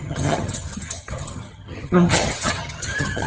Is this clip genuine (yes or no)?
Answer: no